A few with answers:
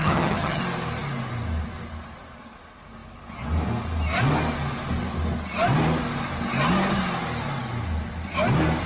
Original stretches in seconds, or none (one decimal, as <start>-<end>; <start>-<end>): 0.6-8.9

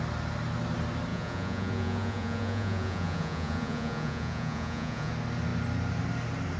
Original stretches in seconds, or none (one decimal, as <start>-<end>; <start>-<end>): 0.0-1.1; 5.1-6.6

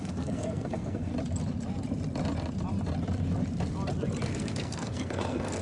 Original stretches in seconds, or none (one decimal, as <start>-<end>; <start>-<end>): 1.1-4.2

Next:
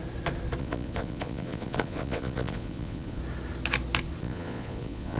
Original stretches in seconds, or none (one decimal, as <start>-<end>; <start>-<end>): 0.0-0.6; 3.2-4.2

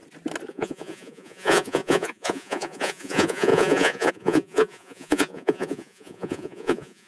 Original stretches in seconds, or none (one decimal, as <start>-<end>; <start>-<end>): 0.0-0.5